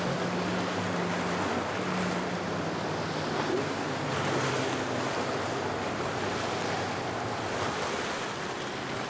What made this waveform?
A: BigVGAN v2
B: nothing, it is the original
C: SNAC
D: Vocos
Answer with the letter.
B